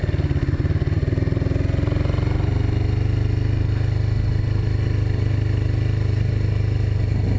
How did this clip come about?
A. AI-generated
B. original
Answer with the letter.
B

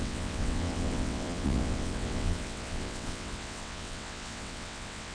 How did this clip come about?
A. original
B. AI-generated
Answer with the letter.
B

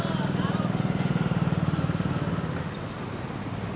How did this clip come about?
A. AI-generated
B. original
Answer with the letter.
B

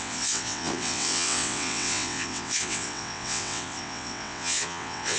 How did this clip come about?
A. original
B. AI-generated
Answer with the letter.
B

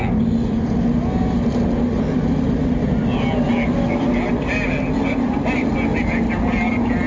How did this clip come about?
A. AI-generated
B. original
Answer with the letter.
B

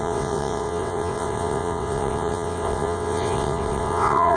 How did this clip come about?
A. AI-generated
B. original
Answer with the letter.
A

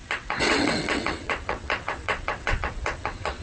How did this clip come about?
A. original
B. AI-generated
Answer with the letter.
B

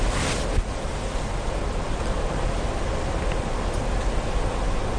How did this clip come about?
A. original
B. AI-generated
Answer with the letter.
A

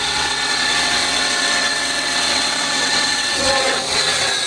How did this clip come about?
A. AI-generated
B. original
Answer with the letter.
A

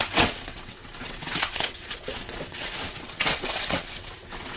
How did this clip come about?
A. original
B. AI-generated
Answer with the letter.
B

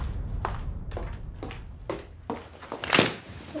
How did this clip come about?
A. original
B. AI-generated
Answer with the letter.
A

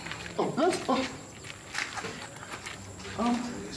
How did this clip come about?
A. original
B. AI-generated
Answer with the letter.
A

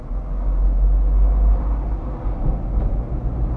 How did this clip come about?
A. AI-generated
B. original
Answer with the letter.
B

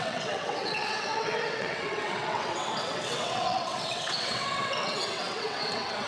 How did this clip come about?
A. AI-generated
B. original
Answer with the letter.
A